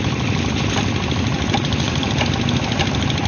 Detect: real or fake real